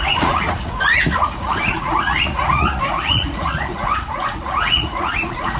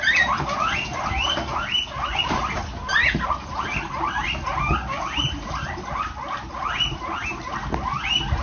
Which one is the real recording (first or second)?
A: second